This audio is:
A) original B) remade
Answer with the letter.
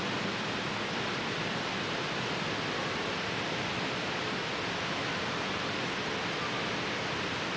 A